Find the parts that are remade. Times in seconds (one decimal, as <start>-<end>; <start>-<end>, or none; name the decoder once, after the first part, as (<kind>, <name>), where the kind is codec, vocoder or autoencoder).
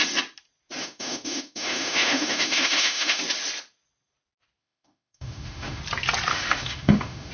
0.8-3.2 (autoencoder, DAC-VAE); 4.6-5.8; 6.3-7.3